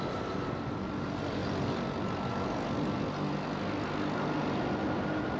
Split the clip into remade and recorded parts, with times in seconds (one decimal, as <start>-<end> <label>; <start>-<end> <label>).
0.0-5.4 recorded